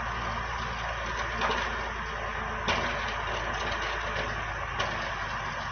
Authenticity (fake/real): real